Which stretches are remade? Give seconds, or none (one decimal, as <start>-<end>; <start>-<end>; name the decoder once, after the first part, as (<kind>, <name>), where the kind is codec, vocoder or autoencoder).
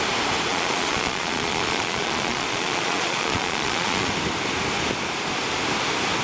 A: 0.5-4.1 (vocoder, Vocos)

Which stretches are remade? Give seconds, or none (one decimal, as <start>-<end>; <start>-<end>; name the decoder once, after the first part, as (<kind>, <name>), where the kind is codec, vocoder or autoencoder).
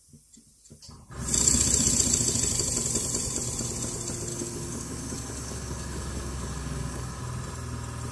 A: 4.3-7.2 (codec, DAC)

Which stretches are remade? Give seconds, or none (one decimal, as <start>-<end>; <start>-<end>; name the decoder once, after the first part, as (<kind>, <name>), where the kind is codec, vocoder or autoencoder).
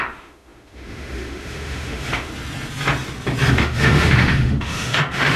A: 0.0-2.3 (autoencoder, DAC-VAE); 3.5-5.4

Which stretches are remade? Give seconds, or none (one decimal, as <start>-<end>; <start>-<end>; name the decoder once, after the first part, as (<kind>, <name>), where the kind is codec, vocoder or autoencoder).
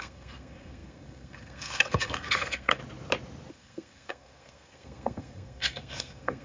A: 0.0-2.8 (codec, SNAC); 3.5-6.4